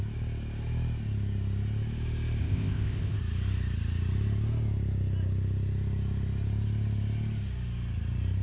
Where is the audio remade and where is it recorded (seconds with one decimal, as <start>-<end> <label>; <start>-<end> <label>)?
0.0-2.4 recorded; 2.4-3.2 remade; 3.2-8.4 recorded